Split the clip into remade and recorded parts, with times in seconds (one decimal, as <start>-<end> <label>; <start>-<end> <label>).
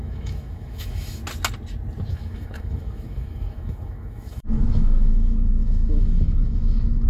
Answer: 0.0-1.2 remade; 1.2-2.1 recorded; 2.1-7.1 remade